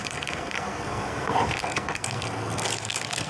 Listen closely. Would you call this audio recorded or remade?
remade